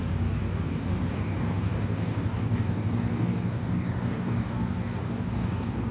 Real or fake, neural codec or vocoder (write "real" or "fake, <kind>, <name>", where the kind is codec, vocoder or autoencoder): fake, codec, DAC